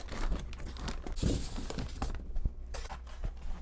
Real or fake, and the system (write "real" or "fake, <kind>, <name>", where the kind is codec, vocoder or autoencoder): real